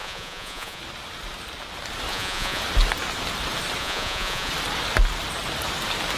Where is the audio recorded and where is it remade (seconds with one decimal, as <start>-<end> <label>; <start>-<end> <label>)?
0.0-0.8 remade; 0.8-2.1 recorded; 2.1-2.6 remade; 2.6-3.8 recorded; 3.8-4.5 remade; 4.5-6.2 recorded